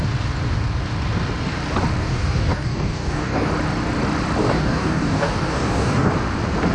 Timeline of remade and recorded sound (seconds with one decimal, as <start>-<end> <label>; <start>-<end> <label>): 0.0-2.0 recorded; 2.0-3.5 remade; 3.5-4.4 recorded; 4.4-6.1 remade; 6.1-6.7 recorded